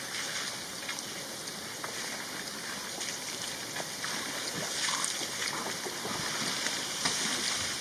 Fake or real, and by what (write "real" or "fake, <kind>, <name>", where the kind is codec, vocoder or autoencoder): real